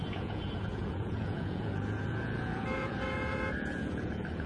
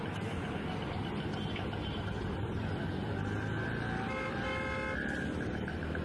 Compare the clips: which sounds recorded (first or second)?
second